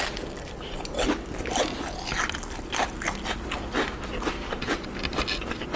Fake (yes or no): no